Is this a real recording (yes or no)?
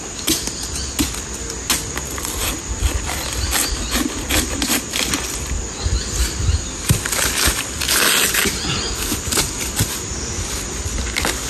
yes